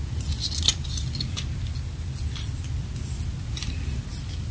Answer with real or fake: real